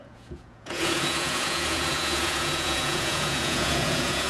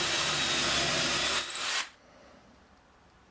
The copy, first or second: first